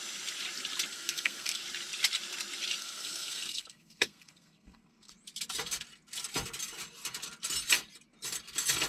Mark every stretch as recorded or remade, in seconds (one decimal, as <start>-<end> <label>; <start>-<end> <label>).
0.0-0.9 recorded; 0.9-1.6 remade; 1.6-2.8 recorded; 2.8-5.1 remade; 5.1-8.9 recorded